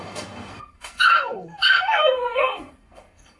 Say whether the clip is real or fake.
fake